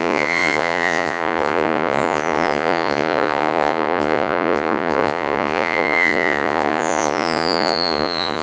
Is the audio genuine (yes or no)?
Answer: no